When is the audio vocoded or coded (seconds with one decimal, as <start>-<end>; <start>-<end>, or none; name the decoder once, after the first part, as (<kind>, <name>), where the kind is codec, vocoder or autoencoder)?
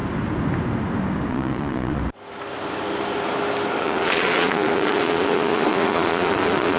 1.3-2.0 (vocoder, Vocos); 3.8-6.8